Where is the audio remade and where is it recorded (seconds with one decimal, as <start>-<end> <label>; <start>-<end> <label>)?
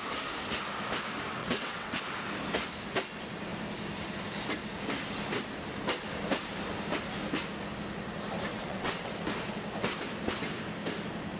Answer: 0.0-1.4 recorded; 1.4-2.0 remade; 2.0-8.5 recorded; 8.5-9.1 remade; 9.1-11.4 recorded